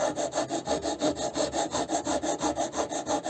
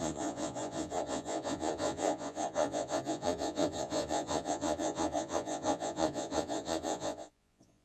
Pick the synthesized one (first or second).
second